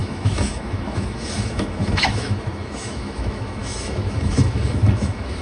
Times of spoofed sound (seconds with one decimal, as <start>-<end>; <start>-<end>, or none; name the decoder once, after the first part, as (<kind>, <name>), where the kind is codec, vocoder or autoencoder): 0.0-5.4 (autoencoder, DAC-VAE)